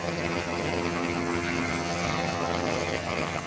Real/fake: fake